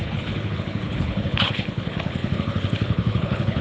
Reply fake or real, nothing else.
fake